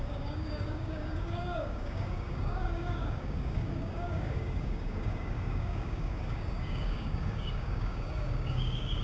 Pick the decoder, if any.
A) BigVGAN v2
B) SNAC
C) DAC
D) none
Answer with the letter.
C